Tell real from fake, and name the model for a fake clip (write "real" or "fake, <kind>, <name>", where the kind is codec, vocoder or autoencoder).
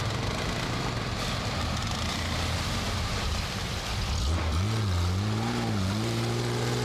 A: real